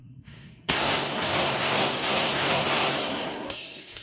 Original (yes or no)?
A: no